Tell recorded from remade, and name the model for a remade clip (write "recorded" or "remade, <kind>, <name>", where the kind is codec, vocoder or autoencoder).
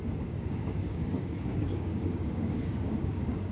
remade, codec, DAC